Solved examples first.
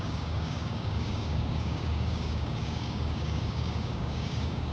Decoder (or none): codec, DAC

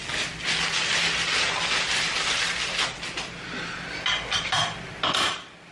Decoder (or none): none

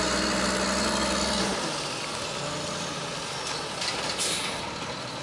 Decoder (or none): none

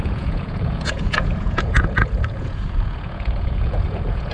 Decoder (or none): vocoder, Vocos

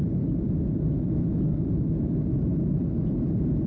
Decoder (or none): none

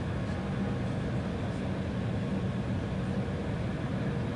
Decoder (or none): none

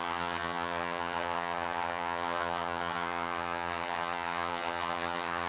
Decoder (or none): vocoder, HiFi-GAN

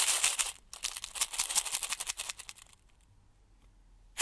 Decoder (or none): none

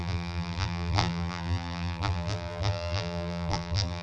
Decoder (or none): vocoder, BigVGAN v2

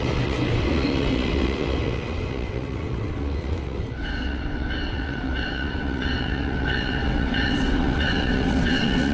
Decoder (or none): vocoder, WaveNeXt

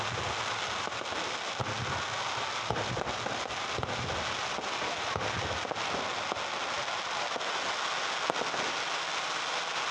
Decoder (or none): none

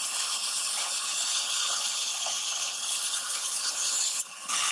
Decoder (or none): codec, HILCodec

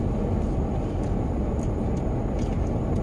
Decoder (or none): none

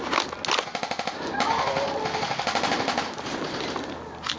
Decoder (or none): none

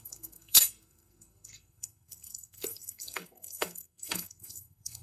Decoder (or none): codec, SNAC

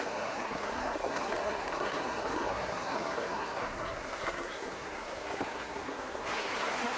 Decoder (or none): codec, SNAC